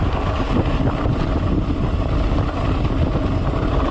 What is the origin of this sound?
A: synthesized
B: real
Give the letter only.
B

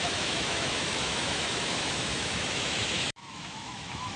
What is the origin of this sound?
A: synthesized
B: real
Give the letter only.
A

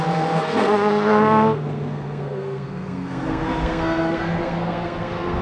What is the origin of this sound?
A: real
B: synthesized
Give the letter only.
B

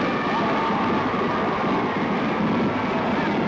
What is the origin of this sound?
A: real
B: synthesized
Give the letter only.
A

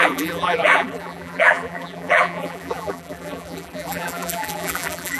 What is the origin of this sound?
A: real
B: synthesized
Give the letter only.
B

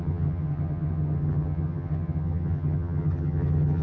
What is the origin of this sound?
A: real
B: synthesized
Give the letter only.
B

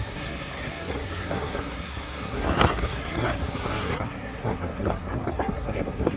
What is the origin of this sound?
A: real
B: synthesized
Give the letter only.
B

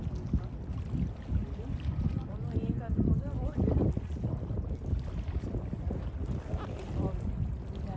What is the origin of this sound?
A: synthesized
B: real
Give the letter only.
B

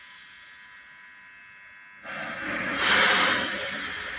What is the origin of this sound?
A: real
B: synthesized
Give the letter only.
A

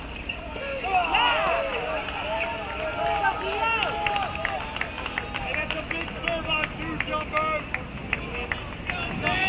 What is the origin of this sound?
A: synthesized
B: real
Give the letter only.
B